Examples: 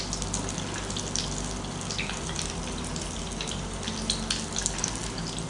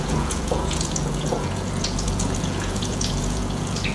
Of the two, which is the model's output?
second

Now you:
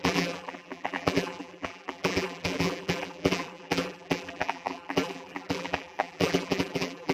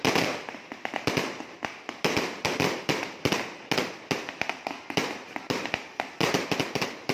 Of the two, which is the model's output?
first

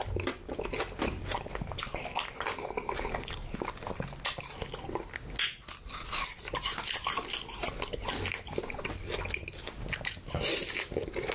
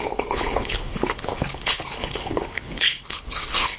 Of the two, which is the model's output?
second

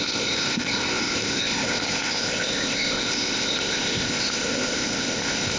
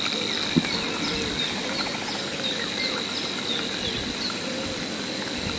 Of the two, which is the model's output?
first